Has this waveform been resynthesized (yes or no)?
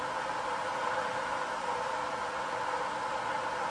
no